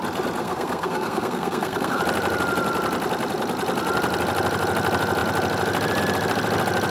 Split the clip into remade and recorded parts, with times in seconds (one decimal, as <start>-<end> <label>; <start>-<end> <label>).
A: 0.0-0.4 recorded; 0.4-2.0 remade; 2.0-6.9 recorded